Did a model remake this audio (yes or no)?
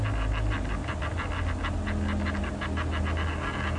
no